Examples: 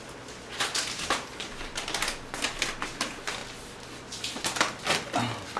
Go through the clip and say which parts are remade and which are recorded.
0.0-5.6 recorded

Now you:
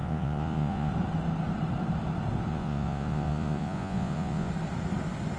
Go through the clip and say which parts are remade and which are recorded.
0.0-0.9 remade; 0.9-2.5 recorded; 2.5-4.5 remade; 4.5-5.4 recorded

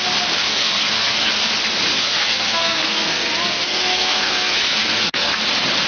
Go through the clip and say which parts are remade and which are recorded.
0.0-0.5 recorded; 0.5-1.3 remade; 1.3-1.9 recorded; 1.9-5.4 remade; 5.4-5.9 recorded

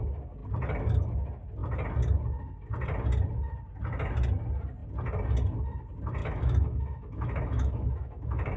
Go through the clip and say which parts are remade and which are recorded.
0.0-6.2 recorded; 6.2-8.6 remade

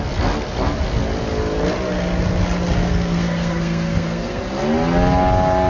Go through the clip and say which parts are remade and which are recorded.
0.0-2.8 recorded; 2.8-4.4 remade; 4.4-5.7 recorded

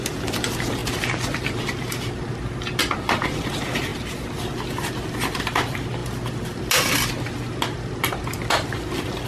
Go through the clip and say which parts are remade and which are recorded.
0.0-9.3 recorded